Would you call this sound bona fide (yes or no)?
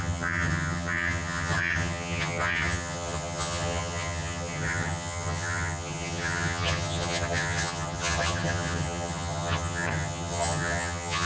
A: no